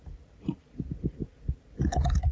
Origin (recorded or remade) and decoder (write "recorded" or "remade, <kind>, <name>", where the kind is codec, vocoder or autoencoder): recorded